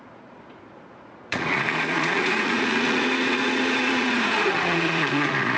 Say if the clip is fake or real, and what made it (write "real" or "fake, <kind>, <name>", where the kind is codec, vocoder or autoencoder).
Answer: fake, vocoder, Vocos